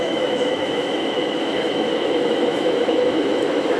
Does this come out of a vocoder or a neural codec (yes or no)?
yes